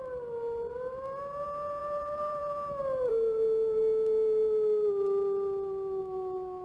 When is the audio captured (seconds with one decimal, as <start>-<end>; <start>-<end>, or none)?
0.0-1.8; 2.4-6.6